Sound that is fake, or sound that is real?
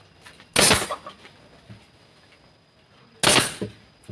real